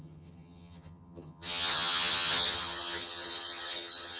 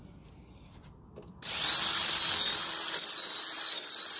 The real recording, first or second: second